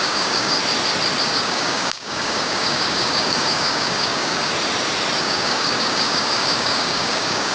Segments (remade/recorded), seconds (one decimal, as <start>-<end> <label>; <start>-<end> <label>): 0.0-0.6 remade; 0.6-1.2 recorded; 1.2-4.5 remade; 4.5-5.2 recorded; 5.2-7.5 remade